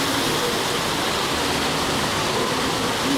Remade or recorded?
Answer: recorded